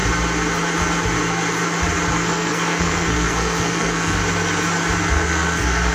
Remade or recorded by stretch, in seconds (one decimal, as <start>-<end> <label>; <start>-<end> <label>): 0.0-2.1 recorded; 2.1-4.2 remade; 4.2-5.1 recorded; 5.1-5.9 remade